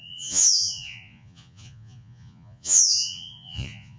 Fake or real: fake